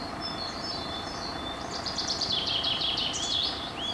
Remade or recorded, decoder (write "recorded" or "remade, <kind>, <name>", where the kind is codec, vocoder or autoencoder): remade, vocoder, BigVGAN v2